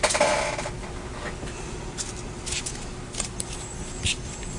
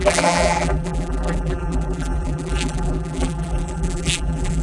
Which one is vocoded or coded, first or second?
second